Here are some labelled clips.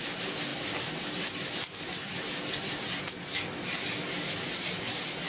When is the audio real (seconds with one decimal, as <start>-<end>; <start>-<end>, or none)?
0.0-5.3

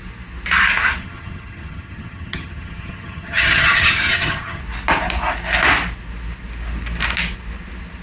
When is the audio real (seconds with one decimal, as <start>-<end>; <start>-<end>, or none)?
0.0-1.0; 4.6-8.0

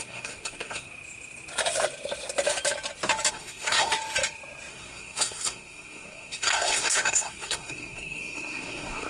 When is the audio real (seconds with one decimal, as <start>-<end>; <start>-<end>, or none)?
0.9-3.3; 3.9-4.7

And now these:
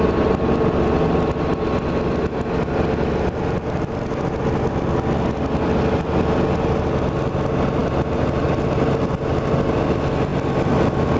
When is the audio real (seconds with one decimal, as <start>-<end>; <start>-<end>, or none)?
0.0-11.2

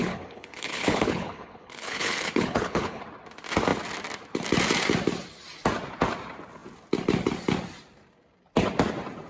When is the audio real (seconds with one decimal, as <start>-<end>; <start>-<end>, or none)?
3.0-9.3

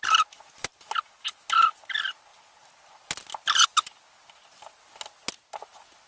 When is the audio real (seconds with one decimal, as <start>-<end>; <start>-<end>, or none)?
0.0-6.1

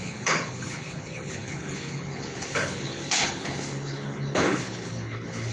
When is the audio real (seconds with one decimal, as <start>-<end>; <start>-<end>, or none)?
none

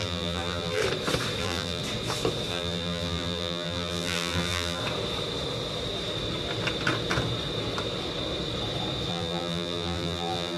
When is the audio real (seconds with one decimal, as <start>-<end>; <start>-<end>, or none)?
0.8-1.4; 1.8-2.5; 4.8-9.1